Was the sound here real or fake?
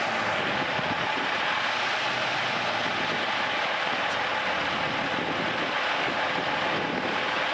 real